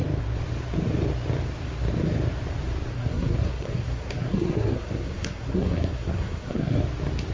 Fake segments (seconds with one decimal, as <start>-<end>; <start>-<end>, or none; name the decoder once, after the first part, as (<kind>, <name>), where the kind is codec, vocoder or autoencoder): 2.9-6.8 (codec, SNAC)